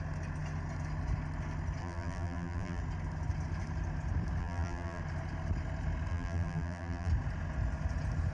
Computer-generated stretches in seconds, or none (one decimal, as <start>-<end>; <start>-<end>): 1.8-2.8; 4.4-5.0; 6.1-7.1